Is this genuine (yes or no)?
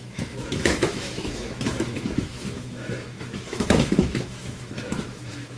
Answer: no